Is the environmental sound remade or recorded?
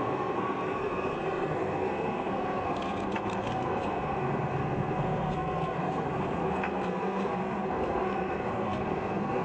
remade